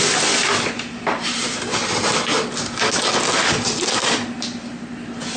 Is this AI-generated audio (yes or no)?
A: no